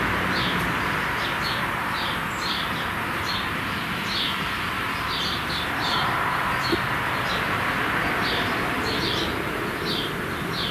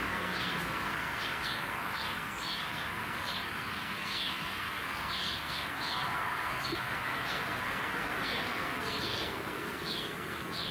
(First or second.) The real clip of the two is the first